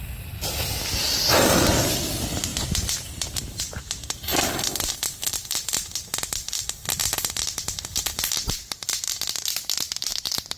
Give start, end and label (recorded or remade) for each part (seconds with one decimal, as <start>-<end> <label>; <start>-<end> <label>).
0.0-10.6 recorded